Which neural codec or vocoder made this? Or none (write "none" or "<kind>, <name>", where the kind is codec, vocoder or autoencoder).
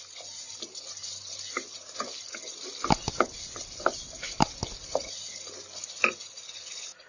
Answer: none